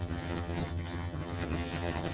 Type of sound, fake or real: fake